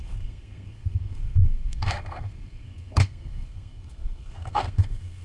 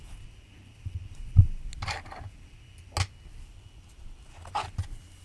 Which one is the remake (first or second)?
first